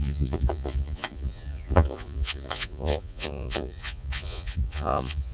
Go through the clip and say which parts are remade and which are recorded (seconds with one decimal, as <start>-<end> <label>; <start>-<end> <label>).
0.0-5.3 remade